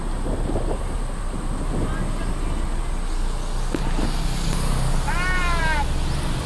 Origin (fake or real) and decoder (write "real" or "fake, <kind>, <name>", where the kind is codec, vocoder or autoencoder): real